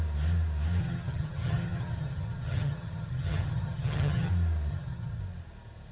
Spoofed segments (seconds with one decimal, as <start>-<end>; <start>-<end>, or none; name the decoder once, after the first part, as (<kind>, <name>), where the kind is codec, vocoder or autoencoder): 0.8-4.3 (vocoder, HiFi-GAN); 4.7-5.2